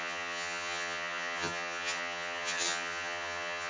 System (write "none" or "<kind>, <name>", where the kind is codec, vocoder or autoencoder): vocoder, HiFi-GAN